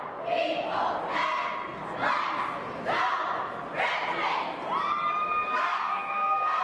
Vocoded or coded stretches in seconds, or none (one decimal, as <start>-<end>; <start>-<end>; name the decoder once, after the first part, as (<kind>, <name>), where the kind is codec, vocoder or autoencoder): 5.2-6.6 (codec, SNAC)